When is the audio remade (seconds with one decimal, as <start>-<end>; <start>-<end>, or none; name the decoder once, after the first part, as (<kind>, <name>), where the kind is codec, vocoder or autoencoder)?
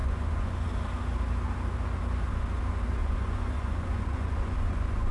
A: 0.0-0.7 (vocoder, Vocos); 3.0-5.1